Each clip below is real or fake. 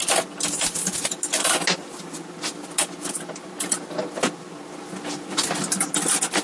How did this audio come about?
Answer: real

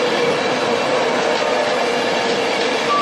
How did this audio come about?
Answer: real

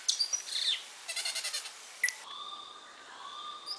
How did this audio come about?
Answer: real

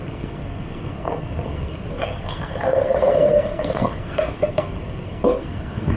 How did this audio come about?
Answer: fake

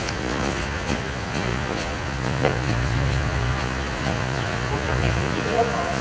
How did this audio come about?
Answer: fake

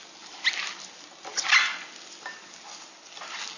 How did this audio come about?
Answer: real